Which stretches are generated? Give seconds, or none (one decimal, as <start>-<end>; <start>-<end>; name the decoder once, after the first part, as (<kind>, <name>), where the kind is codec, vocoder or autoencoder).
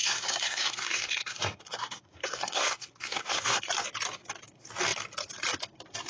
0.0-3.7 (codec, SNAC)